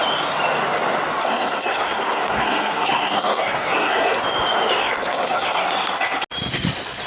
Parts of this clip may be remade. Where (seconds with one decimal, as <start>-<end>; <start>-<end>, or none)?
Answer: 1.2-4.2; 4.8-5.7